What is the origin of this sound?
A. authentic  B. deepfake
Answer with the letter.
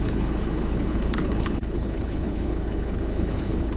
B